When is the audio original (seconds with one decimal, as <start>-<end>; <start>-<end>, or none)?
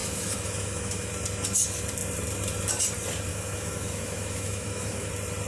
1.1-3.3; 5.1-5.5